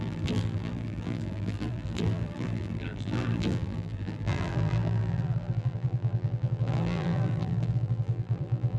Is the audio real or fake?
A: fake